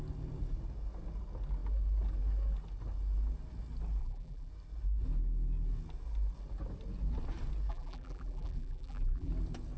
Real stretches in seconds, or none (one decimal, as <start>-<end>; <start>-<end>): 0.0-4.0; 4.5-7.7; 9.3-9.8